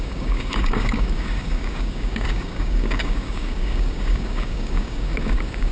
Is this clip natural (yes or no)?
no